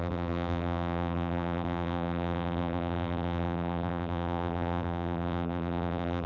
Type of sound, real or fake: fake